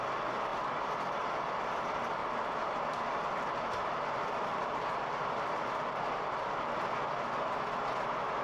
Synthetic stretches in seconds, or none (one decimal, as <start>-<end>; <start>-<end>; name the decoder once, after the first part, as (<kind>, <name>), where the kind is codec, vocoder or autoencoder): 2.2-6.9 (vocoder, BigVGAN v2)

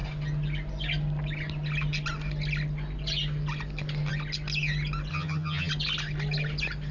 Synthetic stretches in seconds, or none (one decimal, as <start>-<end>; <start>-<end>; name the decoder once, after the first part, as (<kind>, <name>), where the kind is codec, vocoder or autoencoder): 5.1-5.7 (vocoder, HiFi-GAN)

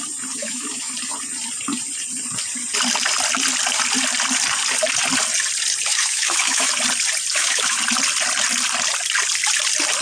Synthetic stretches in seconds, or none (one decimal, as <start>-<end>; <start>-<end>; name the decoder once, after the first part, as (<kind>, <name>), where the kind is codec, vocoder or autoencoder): 0.4-0.9 (autoencoder, DAC-VAE); 5.9-6.7; 7.3-7.8

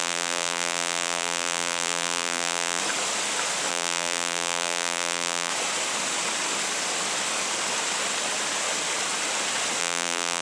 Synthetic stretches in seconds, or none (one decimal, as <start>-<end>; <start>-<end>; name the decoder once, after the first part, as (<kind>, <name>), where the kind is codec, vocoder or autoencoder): 0.0-2.8 (vocoder, BigVGAN v2); 3.7-5.5; 9.8-10.4

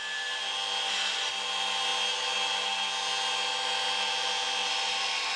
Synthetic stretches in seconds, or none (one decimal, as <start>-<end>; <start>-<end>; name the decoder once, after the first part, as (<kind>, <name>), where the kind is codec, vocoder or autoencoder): none